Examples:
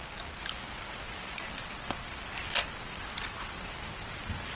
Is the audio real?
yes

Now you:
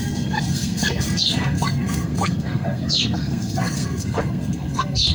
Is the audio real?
no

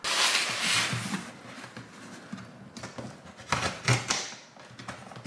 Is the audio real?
yes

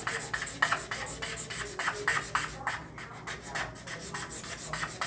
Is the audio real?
yes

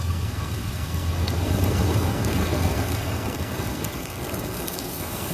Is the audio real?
no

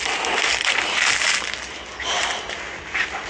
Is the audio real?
yes